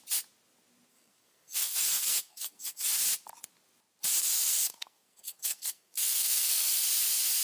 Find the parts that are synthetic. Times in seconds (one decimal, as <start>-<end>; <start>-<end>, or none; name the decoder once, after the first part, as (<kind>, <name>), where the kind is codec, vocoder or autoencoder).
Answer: 0.9-2.9 (codec, SNAC); 4.2-6.8

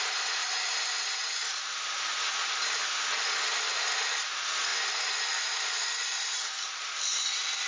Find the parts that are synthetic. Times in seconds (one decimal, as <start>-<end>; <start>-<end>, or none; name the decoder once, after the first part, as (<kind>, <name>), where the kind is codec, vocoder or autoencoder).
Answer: none

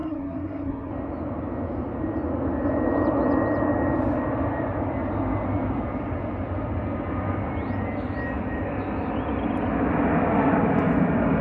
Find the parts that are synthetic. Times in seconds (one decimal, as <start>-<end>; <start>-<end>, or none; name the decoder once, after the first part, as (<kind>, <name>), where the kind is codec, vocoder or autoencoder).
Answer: 0.0-0.9 (codec, SNAC)

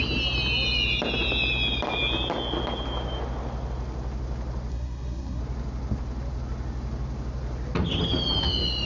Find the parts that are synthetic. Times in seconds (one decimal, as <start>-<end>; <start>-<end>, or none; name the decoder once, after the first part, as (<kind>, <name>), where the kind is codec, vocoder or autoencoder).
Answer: 4.7-5.4 (codec, SNAC)